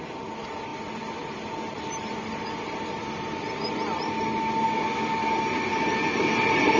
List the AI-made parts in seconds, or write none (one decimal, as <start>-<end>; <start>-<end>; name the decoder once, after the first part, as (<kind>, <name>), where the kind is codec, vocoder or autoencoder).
none